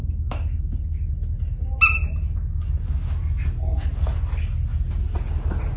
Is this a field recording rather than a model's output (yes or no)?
yes